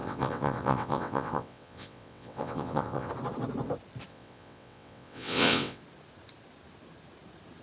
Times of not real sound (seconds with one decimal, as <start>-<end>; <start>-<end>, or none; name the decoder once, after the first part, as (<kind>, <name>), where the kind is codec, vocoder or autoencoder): 0.0-3.1 (vocoder, WaveNeXt); 4.1-5.8